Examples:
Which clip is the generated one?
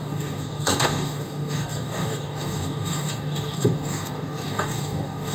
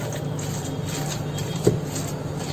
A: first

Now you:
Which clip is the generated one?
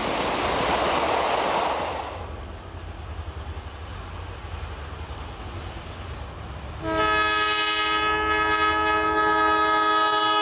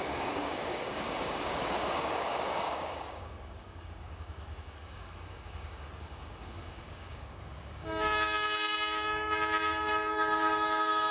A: second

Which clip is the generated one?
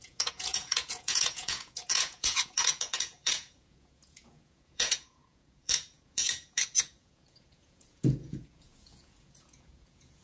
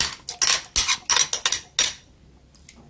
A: first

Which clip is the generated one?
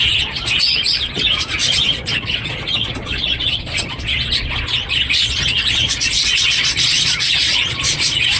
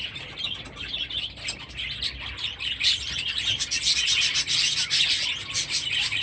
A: first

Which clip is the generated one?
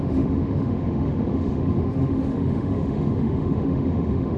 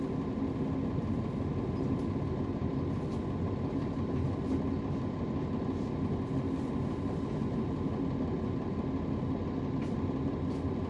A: first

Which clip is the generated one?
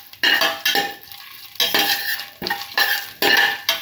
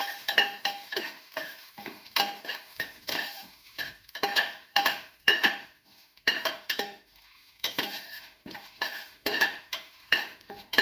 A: second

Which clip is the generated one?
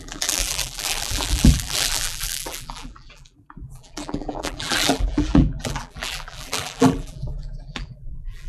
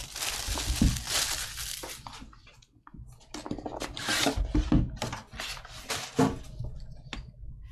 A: first